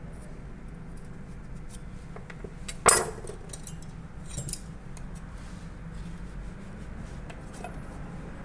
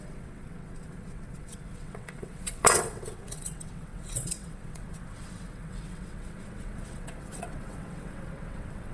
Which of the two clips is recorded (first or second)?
first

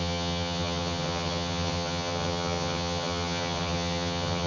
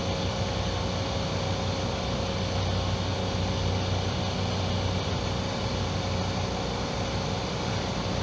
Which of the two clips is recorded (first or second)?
second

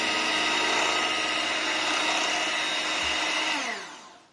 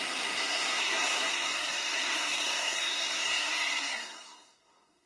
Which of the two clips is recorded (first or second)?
first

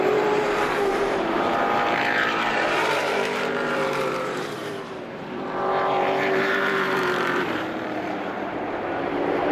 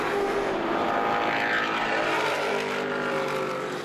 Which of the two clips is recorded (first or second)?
second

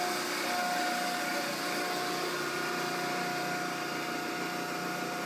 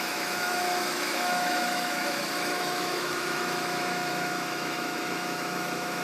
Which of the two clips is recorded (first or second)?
first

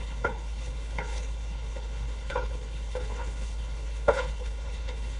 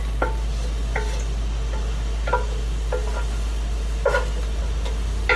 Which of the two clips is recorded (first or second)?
second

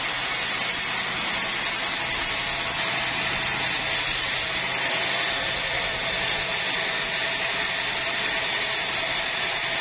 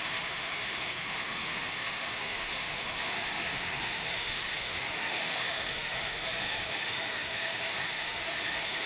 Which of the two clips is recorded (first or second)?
first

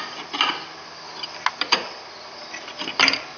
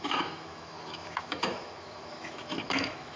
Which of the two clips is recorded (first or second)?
first